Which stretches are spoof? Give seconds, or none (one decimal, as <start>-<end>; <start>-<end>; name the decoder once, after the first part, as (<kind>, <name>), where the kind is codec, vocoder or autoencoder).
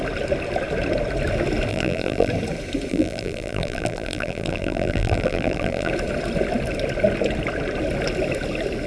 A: 1.7-2.3 (vocoder, BigVGAN v2); 2.9-5.9